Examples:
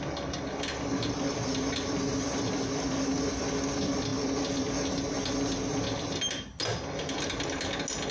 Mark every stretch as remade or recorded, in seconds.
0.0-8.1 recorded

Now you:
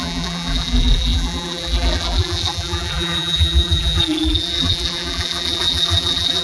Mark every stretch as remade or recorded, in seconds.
0.0-6.4 remade

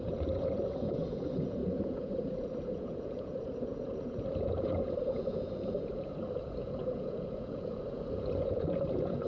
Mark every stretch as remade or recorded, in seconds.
0.0-9.3 remade